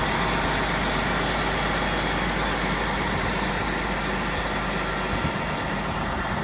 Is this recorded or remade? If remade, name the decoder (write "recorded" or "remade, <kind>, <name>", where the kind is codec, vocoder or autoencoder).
recorded